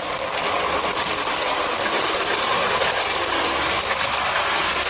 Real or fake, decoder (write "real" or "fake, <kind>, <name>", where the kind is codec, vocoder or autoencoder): real